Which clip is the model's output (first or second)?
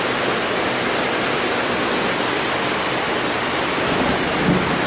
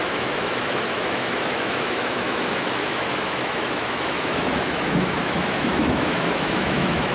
second